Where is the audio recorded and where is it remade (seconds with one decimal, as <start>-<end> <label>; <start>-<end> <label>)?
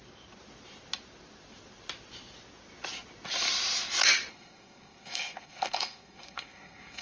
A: 0.0-4.3 recorded; 4.3-7.0 remade